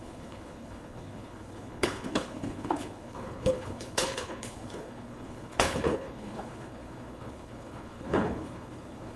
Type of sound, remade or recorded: remade